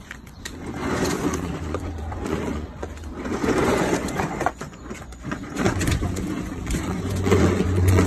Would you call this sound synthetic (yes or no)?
yes